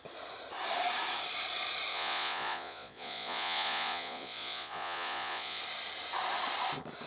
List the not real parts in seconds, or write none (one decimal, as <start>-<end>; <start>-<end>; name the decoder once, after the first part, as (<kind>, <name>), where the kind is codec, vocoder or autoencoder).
1.9-5.6 (vocoder, Vocos)